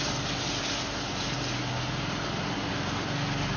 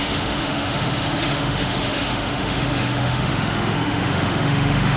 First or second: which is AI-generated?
second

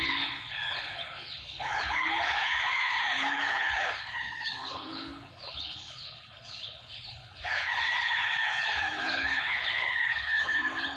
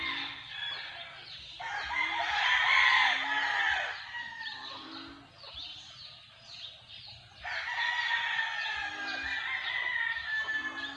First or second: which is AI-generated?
first